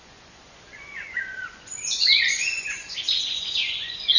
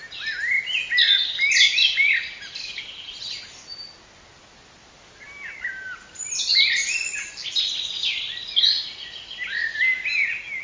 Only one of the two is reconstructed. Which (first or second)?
first